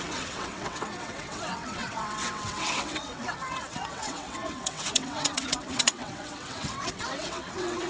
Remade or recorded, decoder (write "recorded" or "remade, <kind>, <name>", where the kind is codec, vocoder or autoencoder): remade, vocoder, WaveNeXt